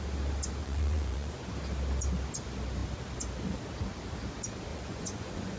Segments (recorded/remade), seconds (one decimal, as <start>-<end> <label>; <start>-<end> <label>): 0.0-0.6 recorded; 0.6-1.5 remade; 1.5-4.7 recorded; 4.7-5.6 remade